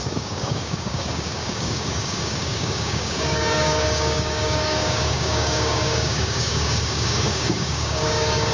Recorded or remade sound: remade